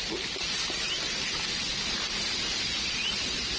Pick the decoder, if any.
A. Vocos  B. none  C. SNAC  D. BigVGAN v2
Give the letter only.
B